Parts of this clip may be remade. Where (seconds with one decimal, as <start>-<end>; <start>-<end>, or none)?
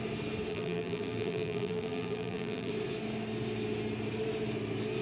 0.5-2.7